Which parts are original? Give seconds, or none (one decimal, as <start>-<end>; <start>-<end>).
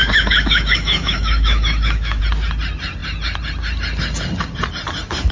2.2-5.3